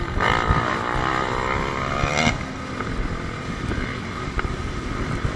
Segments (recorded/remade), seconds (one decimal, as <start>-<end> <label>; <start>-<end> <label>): 0.0-5.4 recorded